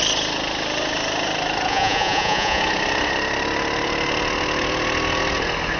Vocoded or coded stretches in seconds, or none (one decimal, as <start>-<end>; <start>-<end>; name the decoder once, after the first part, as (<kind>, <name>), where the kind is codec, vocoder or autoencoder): 1.7-2.6 (vocoder, Vocos)